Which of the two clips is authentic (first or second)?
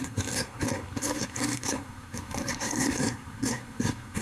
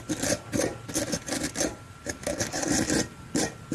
second